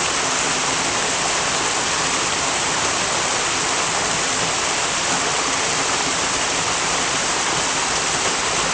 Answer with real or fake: real